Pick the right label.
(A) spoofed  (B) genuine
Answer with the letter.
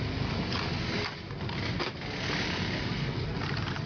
B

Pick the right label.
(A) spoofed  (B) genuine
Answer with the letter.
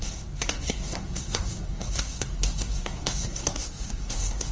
A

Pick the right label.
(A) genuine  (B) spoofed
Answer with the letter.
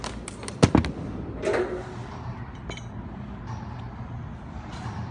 A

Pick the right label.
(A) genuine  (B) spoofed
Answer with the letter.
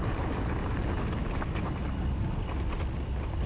A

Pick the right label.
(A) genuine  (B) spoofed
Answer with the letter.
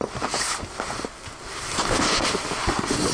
A